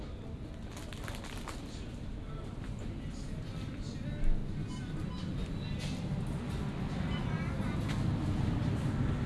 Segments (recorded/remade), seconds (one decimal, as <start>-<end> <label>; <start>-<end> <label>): 0.0-9.3 recorded